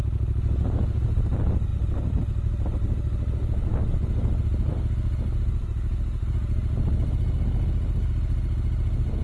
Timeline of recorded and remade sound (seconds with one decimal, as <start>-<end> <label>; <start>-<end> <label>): 0.0-9.2 recorded